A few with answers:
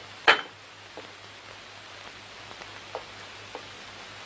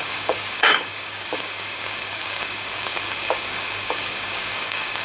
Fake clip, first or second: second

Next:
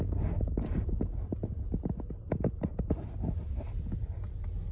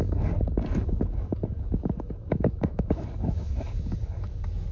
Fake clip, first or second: second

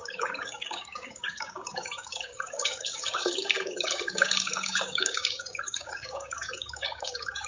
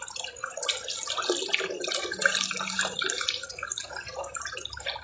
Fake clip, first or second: first